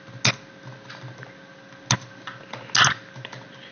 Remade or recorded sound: recorded